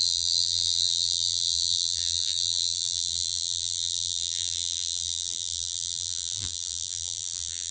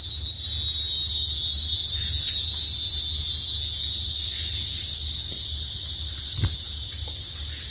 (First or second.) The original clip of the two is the second